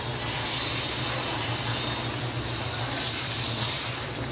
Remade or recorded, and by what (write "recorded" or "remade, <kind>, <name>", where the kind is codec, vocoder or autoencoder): recorded